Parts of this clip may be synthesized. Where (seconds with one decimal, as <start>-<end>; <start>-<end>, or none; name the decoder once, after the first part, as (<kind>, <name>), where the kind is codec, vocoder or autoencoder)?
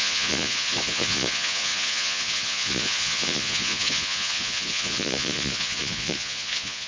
0.0-6.9 (vocoder, Vocos)